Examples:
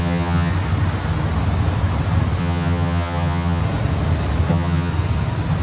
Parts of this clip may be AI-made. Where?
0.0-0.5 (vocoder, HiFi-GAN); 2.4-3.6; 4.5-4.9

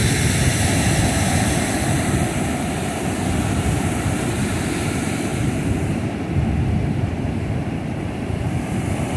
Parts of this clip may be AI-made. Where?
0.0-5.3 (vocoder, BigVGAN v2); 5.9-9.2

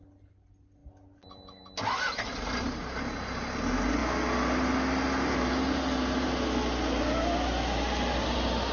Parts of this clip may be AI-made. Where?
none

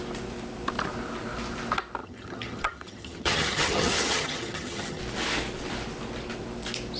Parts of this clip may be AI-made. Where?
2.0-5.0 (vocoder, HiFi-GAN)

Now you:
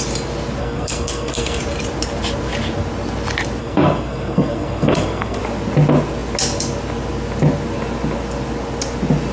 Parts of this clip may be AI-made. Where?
0.6-1.6 (codec, SNAC); 3.6-5.4